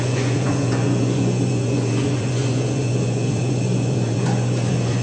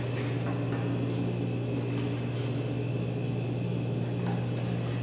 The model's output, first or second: first